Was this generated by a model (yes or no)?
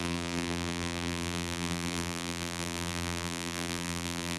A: yes